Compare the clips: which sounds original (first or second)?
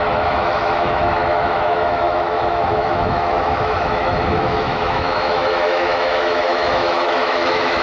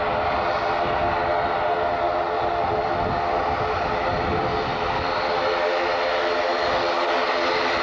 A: second